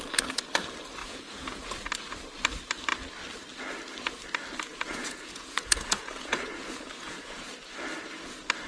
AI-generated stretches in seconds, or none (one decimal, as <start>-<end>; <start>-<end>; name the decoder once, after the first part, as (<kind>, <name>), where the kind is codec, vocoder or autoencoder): 1.0-1.7 (vocoder, Vocos); 4.7-7.5